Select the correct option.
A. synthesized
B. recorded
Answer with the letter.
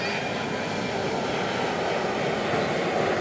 B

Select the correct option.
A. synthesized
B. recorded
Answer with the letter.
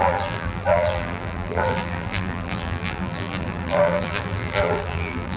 A